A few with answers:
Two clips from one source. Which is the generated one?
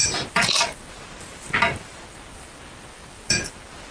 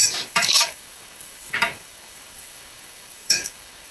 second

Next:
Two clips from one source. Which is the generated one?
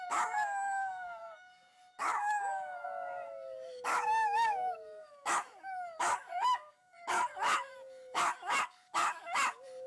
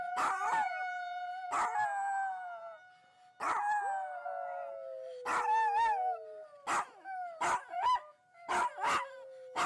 first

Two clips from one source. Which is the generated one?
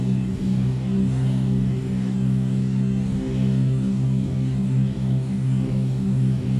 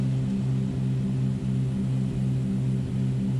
first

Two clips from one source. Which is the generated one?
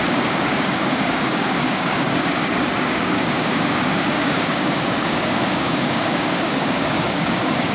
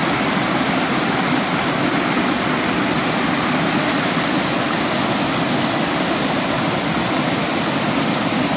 first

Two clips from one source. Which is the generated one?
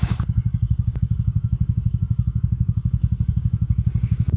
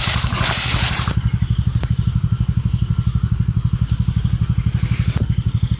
first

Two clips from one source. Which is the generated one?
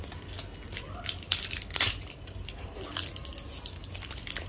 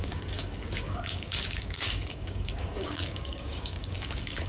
second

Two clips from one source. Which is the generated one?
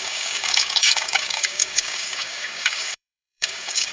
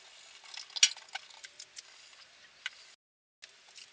first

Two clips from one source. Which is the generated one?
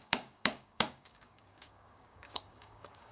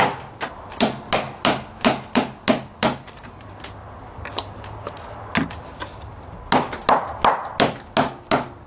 first